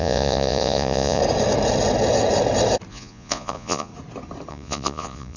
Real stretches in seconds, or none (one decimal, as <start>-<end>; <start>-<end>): 1.2-2.9; 3.9-4.5